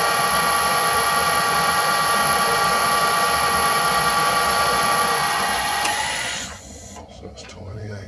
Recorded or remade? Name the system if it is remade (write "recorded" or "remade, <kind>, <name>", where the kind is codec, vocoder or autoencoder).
remade, vocoder, Vocos